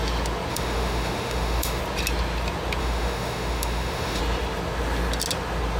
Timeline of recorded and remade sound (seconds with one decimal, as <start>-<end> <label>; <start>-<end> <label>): 0.0-0.5 recorded; 0.5-1.8 remade; 1.8-2.8 recorded; 2.8-4.2 remade; 4.2-5.8 recorded

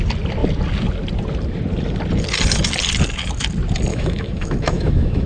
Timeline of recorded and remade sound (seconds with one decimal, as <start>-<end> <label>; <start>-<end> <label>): 0.0-3.9 recorded; 3.9-5.3 remade

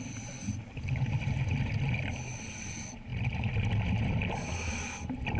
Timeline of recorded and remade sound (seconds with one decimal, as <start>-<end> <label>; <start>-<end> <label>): 0.0-5.4 recorded

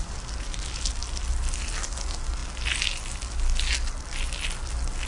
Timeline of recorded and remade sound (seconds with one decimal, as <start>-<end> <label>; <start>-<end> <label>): 0.0-5.1 recorded